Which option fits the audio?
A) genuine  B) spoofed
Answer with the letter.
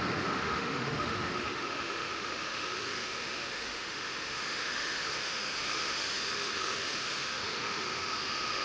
B